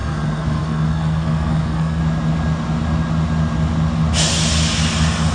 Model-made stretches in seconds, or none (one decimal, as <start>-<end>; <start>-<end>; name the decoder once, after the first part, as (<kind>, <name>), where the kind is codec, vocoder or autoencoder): 0.0-2.0 (codec, SNAC)